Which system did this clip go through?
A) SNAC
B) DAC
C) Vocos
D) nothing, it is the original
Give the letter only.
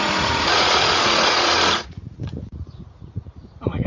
C